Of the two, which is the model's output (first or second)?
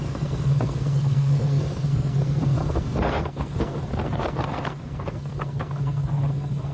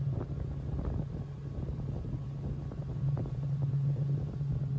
first